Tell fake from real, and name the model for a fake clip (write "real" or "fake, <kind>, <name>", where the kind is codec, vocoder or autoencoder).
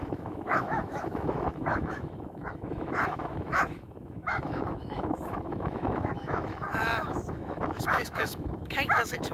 fake, autoencoder, DAC-VAE